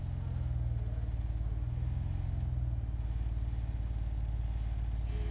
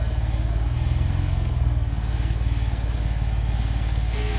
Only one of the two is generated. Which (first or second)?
second